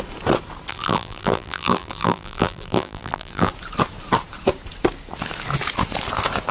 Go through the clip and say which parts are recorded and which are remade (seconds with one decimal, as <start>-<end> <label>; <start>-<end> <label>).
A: 0.0-0.7 recorded; 0.7-3.5 remade; 3.5-6.5 recorded